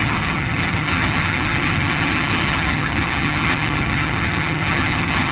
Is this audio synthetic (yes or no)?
yes